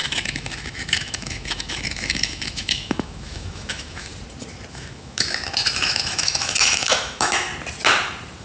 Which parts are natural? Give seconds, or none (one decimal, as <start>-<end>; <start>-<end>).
4.1-4.7; 7.5-8.4